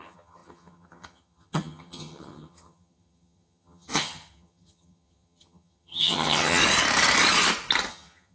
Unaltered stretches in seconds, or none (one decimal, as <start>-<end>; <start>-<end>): 6.6-7.9